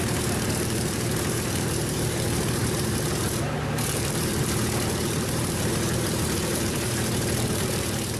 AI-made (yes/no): yes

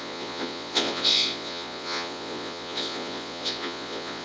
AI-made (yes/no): yes